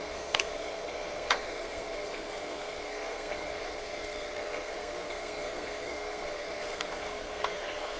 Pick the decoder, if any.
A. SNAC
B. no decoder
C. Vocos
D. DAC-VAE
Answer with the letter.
A